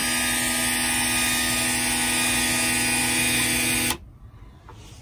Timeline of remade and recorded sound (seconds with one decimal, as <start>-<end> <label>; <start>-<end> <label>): 0.0-5.0 recorded